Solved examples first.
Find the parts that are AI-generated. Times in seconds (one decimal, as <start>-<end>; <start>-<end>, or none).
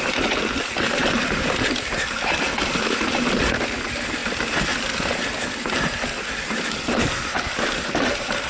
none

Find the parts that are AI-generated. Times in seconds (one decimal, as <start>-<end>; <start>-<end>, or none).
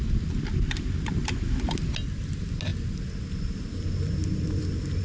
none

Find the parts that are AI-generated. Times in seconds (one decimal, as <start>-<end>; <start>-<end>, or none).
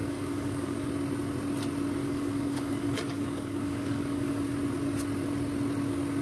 0.0-0.9; 2.0-4.4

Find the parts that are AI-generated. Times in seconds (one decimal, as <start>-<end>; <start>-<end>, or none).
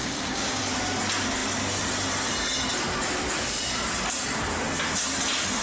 0.0-0.6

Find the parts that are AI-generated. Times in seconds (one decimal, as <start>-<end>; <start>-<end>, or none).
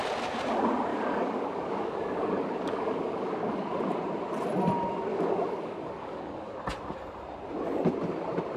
0.9-4.0; 5.1-6.6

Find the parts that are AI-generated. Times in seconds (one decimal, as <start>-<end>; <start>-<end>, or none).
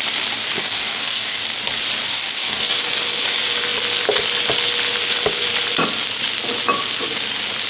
0.6-1.4; 2.1-2.9